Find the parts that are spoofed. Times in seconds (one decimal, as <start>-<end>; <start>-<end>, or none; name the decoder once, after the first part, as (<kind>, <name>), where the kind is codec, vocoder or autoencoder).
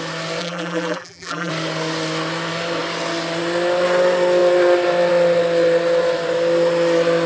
0.4-1.5 (vocoder, BigVGAN v2)